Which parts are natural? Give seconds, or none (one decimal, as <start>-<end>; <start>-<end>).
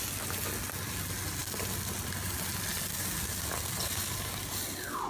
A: 0.0-5.1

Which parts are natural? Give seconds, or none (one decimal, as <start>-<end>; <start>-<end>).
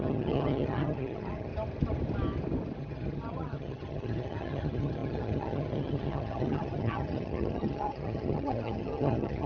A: 1.5-2.8